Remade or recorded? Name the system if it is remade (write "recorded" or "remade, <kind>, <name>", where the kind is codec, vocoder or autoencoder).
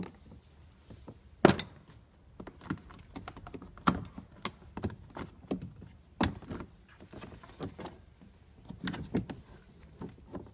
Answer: recorded